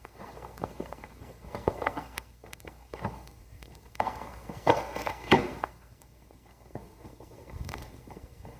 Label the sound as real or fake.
fake